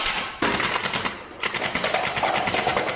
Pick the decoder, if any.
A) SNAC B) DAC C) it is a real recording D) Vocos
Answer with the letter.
C